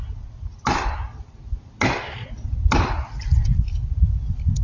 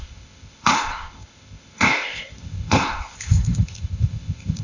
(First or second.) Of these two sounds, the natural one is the first